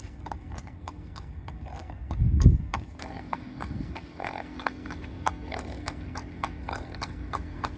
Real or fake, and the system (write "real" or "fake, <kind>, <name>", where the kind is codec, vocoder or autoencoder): fake, codec, SNAC